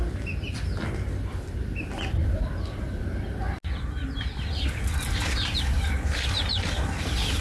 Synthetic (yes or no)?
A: no